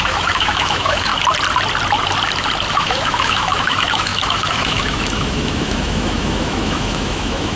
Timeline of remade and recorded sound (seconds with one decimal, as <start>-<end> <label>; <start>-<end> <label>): 0.0-1.1 remade; 1.1-2.7 recorded; 2.7-7.5 remade